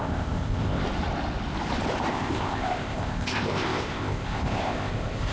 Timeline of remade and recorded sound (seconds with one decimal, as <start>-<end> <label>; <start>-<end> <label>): 0.0-0.8 remade; 0.8-2.1 recorded; 2.1-5.3 remade